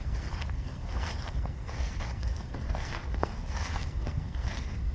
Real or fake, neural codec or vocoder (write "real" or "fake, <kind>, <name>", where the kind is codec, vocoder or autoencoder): fake, codec, SNAC